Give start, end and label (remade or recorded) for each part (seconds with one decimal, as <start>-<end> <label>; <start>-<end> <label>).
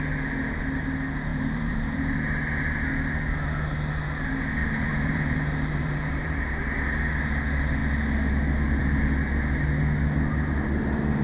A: 0.0-1.3 recorded; 1.3-2.2 remade; 2.2-4.6 recorded; 4.6-6.4 remade; 6.4-11.2 recorded